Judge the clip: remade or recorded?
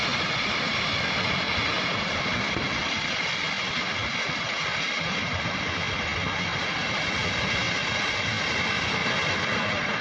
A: recorded